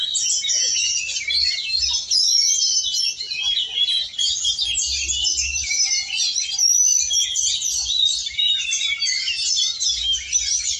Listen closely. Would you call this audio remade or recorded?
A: recorded